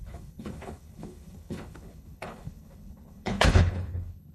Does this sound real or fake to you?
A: fake